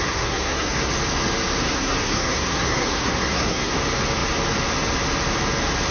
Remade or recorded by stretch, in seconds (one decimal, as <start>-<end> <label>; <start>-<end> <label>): 0.0-0.9 remade; 0.9-1.6 recorded; 1.6-3.8 remade; 3.8-5.9 recorded